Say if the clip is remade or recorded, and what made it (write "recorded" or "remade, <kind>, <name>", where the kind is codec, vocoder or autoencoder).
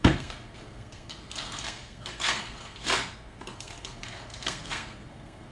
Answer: remade, codec, SNAC